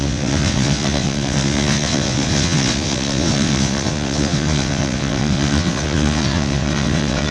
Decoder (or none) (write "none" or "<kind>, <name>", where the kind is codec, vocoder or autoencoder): vocoder, WaveNeXt